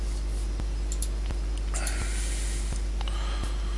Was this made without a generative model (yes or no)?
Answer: yes